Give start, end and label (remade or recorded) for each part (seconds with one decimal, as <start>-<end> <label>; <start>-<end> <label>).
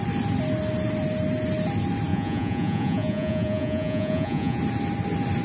0.0-2.1 recorded; 2.1-4.6 remade; 4.6-5.4 recorded